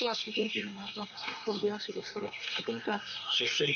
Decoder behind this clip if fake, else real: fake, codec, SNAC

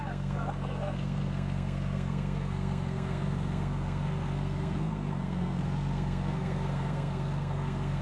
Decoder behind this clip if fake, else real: fake, codec, SNAC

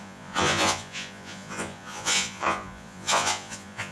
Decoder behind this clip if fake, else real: fake, vocoder, Vocos